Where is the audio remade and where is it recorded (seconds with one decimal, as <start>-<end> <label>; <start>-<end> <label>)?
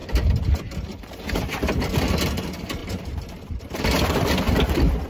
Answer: 0.0-2.8 recorded; 2.8-3.7 remade; 3.7-5.1 recorded